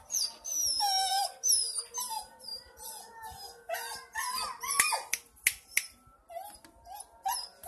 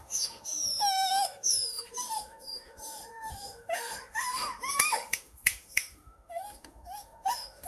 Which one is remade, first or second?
second